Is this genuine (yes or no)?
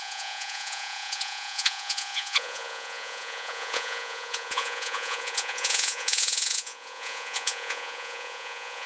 no